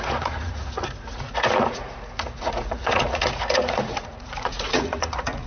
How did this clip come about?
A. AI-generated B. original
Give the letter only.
A